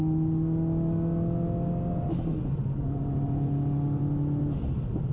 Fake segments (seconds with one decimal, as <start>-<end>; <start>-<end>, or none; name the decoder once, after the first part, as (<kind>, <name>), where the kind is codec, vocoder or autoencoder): none